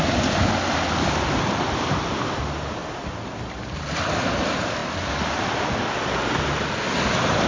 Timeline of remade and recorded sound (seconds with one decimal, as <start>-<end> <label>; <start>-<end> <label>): 0.0-7.5 recorded